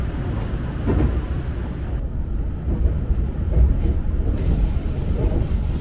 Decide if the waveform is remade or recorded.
recorded